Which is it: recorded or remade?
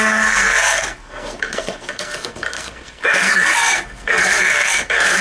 remade